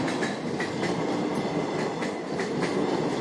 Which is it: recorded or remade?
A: recorded